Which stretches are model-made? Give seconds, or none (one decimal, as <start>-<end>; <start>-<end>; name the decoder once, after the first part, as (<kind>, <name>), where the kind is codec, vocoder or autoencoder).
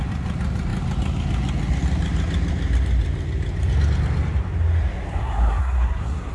5.2-6.3 (codec, SNAC)